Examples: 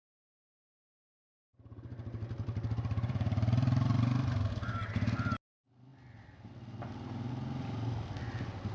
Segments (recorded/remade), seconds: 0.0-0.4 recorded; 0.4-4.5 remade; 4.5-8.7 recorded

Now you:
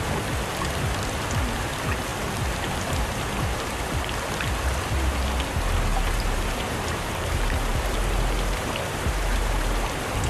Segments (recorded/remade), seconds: 0.0-5.9 recorded; 5.9-9.9 remade; 9.9-10.3 recorded

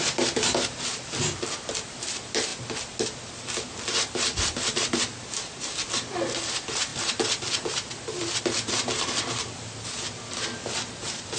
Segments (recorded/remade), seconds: 0.0-2.5 remade; 2.5-3.7 recorded; 3.7-11.4 remade

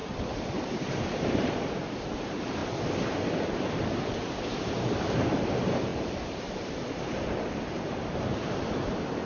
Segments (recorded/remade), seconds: 0.0-2.6 remade; 2.6-3.8 recorded; 3.8-9.2 remade

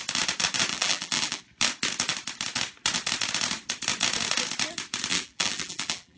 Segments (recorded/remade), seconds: 0.0-0.7 recorded; 0.7-1.4 remade; 1.4-5.1 recorded; 5.1-6.2 remade